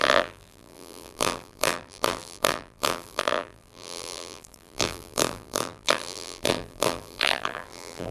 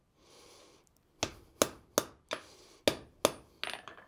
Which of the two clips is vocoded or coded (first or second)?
first